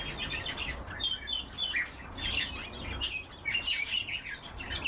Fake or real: real